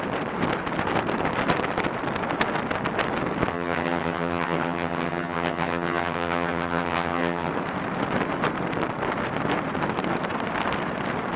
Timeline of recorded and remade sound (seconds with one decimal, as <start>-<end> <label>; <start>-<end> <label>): 0.0-3.5 recorded; 3.5-7.5 remade; 7.5-11.4 recorded